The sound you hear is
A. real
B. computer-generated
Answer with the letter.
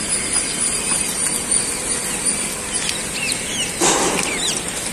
A